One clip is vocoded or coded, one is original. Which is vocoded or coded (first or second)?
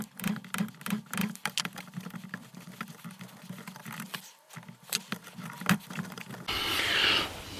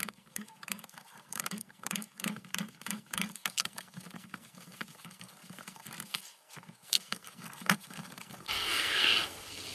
second